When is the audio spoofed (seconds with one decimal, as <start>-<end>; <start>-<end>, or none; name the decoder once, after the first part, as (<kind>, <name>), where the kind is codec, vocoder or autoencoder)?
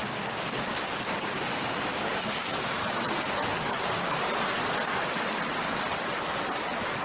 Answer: 0.0-4.2 (codec, DAC)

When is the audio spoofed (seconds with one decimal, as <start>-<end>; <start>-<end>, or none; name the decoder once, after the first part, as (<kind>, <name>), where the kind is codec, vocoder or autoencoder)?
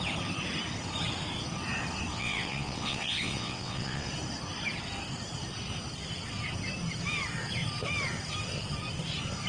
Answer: 2.1-4.1 (vocoder, WaveNeXt)